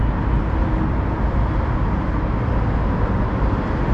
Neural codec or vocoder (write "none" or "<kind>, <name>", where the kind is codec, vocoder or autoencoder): none